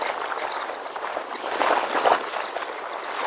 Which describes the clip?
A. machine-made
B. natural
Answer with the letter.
B